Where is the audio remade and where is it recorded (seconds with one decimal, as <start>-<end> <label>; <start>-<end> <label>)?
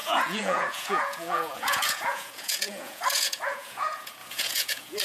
0.0-5.0 remade